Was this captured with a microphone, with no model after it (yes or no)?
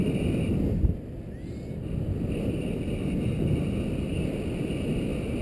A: yes